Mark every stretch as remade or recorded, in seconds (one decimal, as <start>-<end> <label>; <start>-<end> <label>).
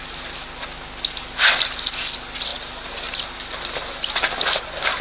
0.0-5.0 recorded